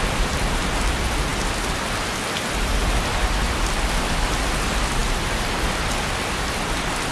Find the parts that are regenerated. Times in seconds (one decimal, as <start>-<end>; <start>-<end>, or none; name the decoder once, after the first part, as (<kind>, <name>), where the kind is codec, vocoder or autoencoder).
none